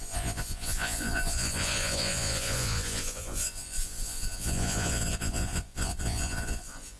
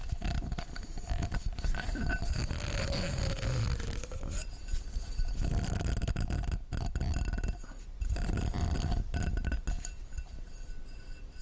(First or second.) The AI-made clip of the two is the first